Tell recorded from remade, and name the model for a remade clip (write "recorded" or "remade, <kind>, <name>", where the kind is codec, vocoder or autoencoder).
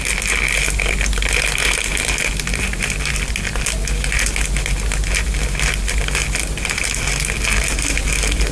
recorded